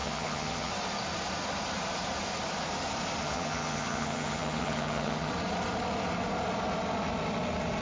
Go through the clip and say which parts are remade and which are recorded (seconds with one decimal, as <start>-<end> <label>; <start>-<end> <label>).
0.0-0.7 remade; 0.7-3.2 recorded; 3.2-5.3 remade; 5.3-7.8 recorded